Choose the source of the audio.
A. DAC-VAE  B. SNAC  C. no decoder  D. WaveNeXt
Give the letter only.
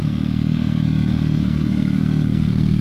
B